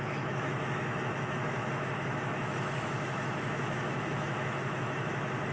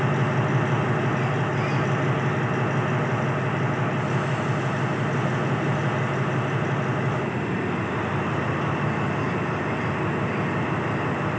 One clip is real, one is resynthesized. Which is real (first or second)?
second